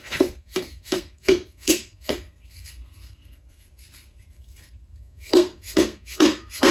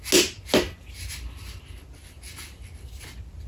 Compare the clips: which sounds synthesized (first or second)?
first